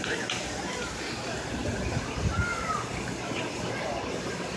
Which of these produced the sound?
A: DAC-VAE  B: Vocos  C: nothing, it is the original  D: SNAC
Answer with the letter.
C